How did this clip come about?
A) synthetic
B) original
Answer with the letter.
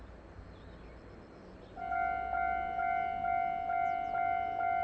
B